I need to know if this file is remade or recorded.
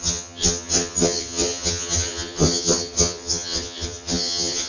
remade